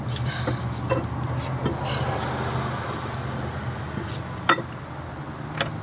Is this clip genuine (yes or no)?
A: yes